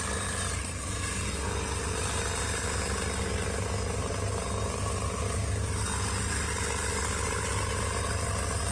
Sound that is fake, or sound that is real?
real